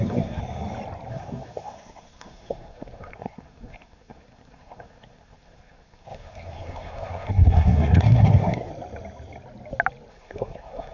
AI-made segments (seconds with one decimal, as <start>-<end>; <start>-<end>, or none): 0.0-0.4; 1.1-8.7; 10.1-10.9